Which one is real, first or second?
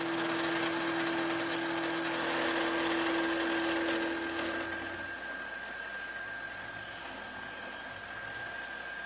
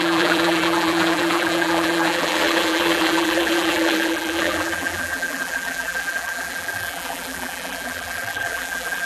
first